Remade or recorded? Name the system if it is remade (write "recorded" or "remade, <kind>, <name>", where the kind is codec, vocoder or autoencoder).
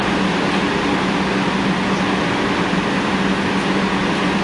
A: recorded